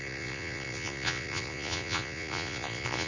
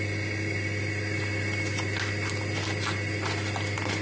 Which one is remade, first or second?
first